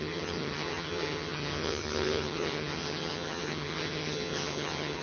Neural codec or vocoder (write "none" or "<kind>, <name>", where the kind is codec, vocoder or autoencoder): vocoder, HiFi-GAN